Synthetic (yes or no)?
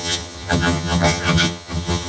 yes